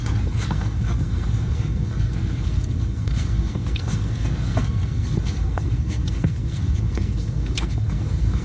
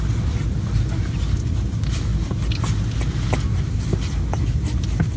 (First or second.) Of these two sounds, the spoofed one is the first